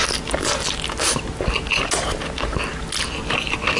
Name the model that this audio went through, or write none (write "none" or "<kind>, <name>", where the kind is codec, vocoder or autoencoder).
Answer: none